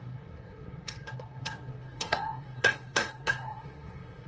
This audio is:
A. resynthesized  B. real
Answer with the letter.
A